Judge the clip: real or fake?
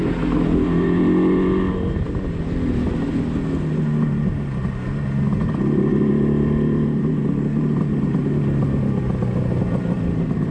real